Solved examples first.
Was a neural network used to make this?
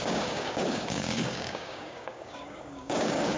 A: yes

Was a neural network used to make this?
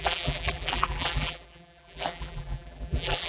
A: yes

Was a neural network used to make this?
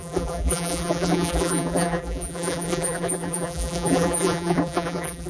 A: yes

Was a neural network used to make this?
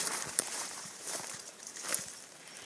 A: yes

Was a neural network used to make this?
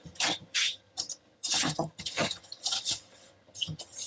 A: yes